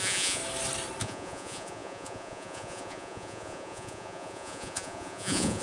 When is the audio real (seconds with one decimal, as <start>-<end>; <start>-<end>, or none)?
0.4-1.0